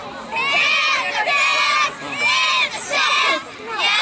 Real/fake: real